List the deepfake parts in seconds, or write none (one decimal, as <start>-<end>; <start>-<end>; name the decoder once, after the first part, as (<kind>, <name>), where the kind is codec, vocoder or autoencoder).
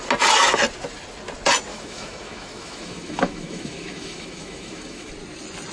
1.7-5.1 (autoencoder, DAC-VAE)